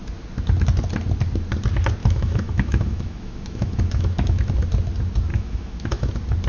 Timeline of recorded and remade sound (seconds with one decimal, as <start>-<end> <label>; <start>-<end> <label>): 0.0-2.0 recorded; 2.0-4.5 remade; 4.5-5.3 recorded; 5.3-6.1 remade; 6.1-6.5 recorded